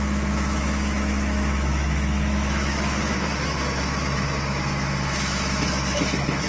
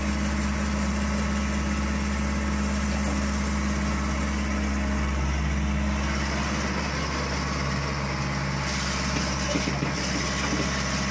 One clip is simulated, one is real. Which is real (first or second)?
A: second